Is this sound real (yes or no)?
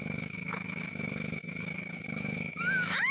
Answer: no